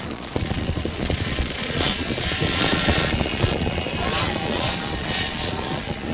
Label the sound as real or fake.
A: fake